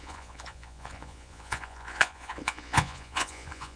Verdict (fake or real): fake